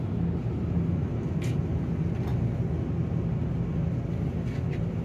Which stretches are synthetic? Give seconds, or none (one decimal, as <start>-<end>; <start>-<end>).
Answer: 0.4-1.9